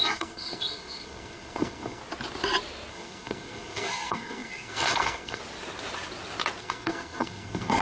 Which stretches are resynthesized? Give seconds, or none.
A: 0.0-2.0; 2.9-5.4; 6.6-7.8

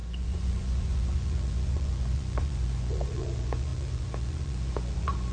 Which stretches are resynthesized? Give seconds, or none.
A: 0.0-5.3